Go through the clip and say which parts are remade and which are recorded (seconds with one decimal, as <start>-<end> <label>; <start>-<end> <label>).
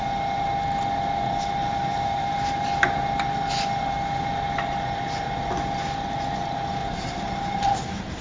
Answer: 0.0-1.6 recorded; 1.6-2.8 remade; 2.8-6.8 recorded; 6.8-8.2 remade